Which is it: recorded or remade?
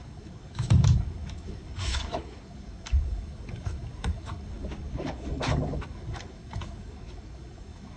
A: remade